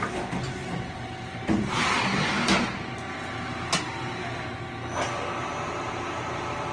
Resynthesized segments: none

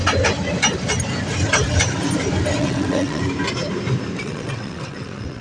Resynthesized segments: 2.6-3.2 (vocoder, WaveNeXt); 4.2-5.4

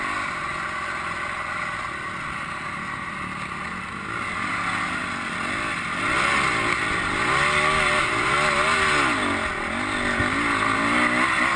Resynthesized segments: none